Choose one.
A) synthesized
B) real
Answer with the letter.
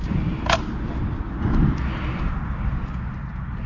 B